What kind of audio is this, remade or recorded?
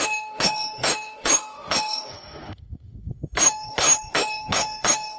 remade